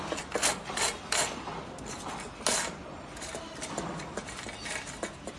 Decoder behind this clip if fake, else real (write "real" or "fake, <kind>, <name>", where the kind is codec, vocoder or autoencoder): real